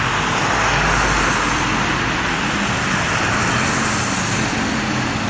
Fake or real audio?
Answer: real